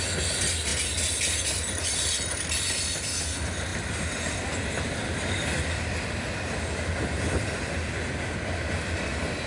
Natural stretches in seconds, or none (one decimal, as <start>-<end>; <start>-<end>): 0.0-9.5